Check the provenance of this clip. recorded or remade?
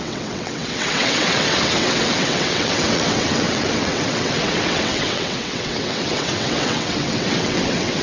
remade